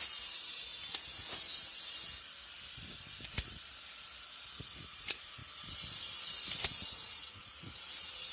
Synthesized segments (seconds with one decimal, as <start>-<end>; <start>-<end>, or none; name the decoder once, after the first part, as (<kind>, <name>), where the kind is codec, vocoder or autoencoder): 0.0-0.7 (vocoder, Vocos); 4.6-5.4; 6.9-8.3